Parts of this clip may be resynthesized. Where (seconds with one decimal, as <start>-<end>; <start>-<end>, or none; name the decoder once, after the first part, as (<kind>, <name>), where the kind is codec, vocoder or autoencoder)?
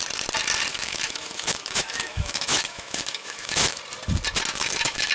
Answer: 0.7-3.8 (autoencoder, DAC-VAE); 4.5-5.1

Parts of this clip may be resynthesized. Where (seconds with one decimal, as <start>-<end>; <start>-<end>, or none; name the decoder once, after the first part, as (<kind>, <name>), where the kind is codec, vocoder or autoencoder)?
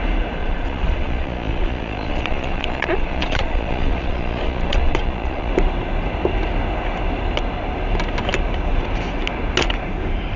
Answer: 0.4-5.5 (vocoder, Vocos)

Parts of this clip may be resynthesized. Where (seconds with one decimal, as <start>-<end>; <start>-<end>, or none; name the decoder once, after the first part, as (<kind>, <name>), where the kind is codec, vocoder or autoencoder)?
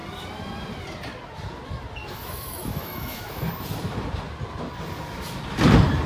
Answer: 2.0-3.5 (autoencoder, DAC-VAE)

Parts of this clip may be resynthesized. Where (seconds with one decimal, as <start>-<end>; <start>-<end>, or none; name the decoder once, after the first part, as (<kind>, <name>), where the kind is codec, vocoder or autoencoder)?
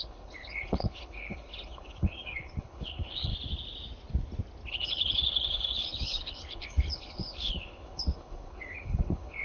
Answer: 0.0-3.3 (codec, HILCodec); 4.7-9.4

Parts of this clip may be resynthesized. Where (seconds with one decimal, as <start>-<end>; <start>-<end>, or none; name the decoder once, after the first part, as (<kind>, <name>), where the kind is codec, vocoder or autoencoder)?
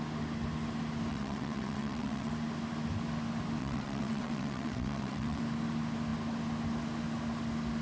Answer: 1.1-2.3 (vocoder, WaveNeXt); 3.6-5.4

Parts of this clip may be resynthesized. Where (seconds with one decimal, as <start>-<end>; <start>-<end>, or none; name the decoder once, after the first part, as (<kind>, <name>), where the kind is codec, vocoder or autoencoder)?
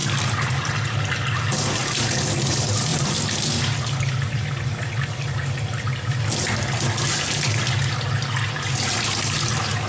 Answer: none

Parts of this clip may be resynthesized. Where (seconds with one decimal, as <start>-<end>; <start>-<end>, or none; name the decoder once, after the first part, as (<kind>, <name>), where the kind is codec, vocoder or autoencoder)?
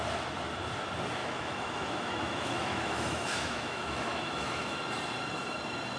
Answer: 1.2-4.8 (autoencoder, DAC-VAE)